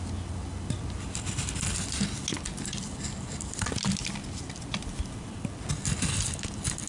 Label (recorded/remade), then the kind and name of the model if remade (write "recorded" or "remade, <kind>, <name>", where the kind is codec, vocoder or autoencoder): recorded